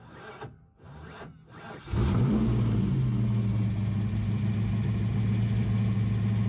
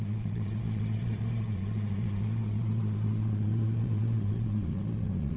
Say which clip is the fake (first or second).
second